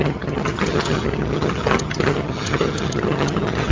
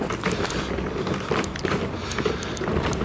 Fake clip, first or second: first